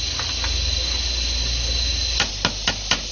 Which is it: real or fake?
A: real